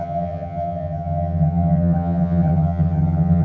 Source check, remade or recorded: remade